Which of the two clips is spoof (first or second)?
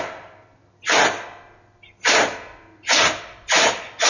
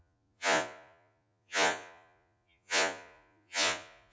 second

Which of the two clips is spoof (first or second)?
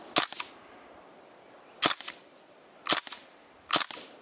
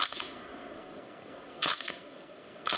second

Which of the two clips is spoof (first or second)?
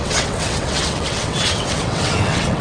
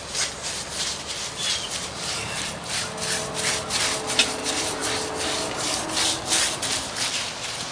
first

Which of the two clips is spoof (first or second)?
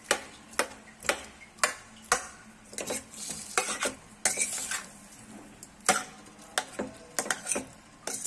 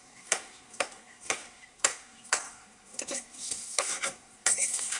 second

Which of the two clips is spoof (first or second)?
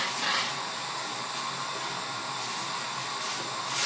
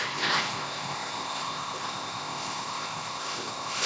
second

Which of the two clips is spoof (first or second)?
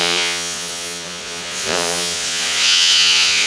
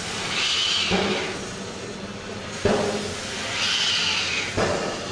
first